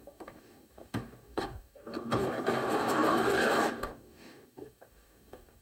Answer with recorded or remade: remade